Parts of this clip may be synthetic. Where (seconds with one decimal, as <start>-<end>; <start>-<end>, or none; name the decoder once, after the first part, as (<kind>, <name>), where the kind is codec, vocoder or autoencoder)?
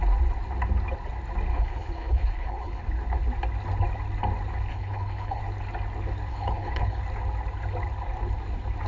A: 1.5-2.8 (codec, HILCodec); 4.7-5.4; 6.3-7.0